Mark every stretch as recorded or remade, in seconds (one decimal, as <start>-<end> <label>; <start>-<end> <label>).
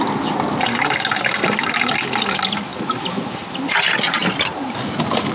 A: 0.0-5.3 recorded